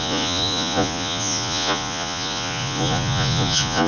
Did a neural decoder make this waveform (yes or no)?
yes